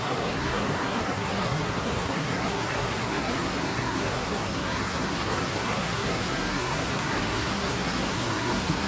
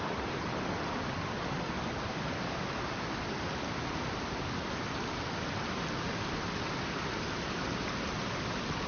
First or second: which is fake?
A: first